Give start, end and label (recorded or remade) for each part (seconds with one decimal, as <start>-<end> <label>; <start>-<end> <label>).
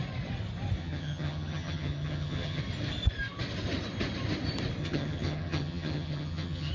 0.0-0.8 recorded; 0.8-2.6 remade; 2.6-4.8 recorded; 4.8-6.7 remade